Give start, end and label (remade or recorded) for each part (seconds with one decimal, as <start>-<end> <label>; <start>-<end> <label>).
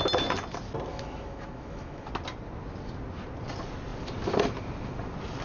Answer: 0.0-0.9 recorded; 0.9-2.1 remade; 2.1-5.4 recorded